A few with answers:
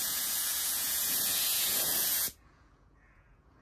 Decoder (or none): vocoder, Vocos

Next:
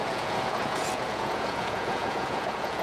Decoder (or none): vocoder, Vocos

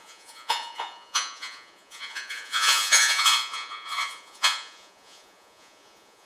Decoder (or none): vocoder, Vocos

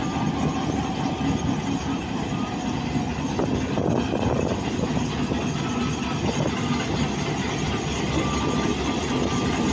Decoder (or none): none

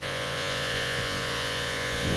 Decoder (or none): vocoder, Vocos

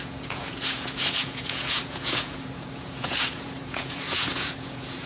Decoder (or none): vocoder, Vocos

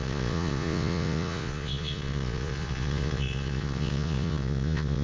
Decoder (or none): vocoder, Vocos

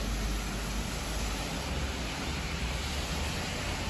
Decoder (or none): none